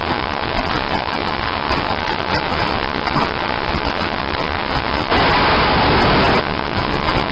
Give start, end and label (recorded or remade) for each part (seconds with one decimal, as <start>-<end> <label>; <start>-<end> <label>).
0.0-5.1 remade; 5.1-6.4 recorded; 6.4-7.3 remade